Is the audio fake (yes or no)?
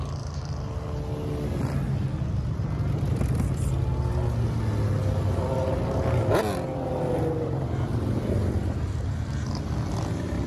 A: no